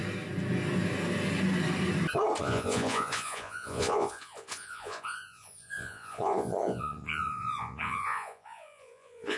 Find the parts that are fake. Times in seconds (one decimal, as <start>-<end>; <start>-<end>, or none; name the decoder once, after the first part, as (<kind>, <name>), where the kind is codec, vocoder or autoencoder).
2.4-9.4 (vocoder, Vocos)